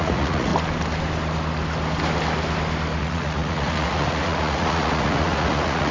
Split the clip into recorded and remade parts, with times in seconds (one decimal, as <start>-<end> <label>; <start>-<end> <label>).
0.0-0.5 remade; 0.5-3.0 recorded; 3.0-5.9 remade